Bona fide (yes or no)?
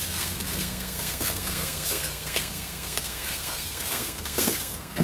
no